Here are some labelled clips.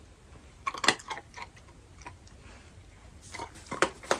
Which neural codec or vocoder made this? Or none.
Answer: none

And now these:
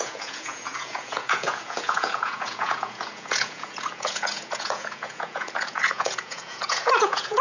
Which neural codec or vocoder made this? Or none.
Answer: vocoder, Vocos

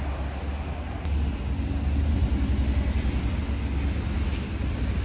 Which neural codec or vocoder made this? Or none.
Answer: none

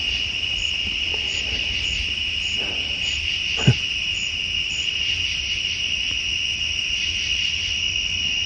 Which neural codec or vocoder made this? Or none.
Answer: none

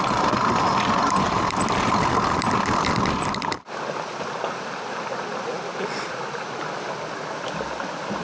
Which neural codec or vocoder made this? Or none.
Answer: none